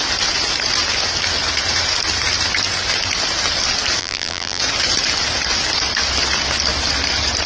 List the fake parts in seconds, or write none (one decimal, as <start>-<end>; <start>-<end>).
4.0-4.6